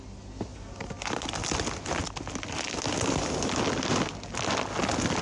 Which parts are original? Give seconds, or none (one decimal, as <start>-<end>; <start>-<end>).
0.0-5.2